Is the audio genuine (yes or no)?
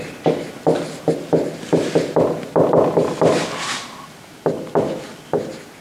yes